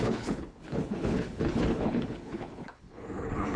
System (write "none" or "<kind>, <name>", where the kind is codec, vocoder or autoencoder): codec, HILCodec